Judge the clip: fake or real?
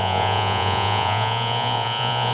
fake